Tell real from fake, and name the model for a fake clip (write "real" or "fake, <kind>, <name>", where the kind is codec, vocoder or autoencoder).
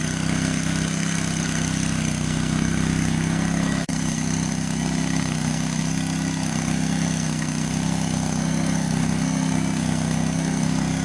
fake, codec, SNAC